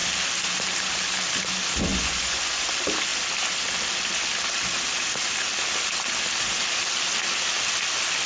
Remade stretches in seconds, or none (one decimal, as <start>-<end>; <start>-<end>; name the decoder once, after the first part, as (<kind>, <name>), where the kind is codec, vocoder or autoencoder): 1.9-2.7 (vocoder, Vocos)